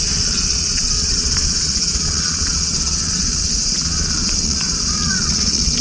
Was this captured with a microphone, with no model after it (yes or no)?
no